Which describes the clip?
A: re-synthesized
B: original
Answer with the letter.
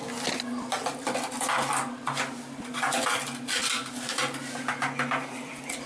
B